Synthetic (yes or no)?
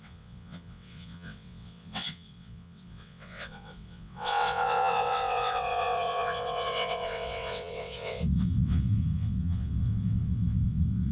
yes